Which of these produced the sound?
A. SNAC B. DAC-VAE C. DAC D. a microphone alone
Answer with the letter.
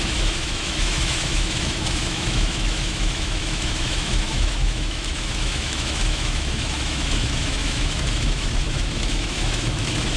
B